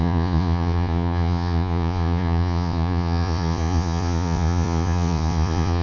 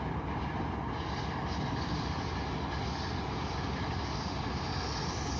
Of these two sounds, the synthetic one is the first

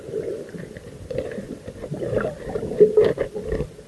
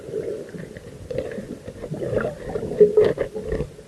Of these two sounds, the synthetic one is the first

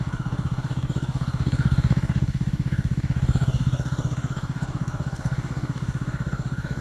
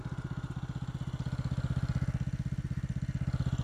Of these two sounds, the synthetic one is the first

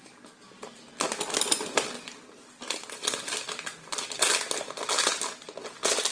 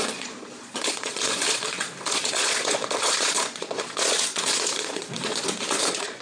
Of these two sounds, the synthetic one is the second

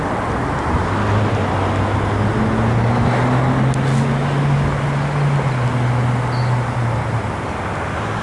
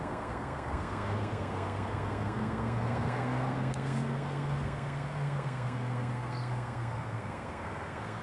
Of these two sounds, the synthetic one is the second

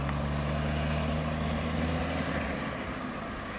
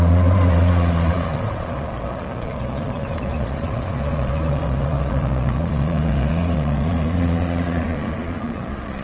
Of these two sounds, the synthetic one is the second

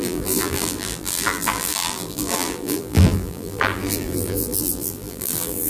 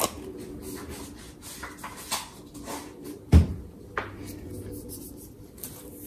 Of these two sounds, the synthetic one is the first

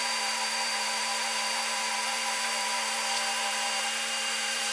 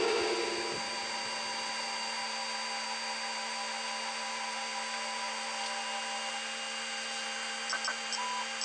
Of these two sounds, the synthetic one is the first